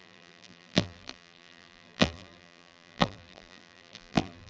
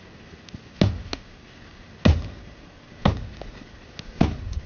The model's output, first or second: first